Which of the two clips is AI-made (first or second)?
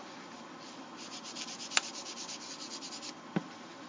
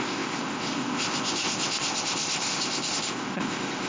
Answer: second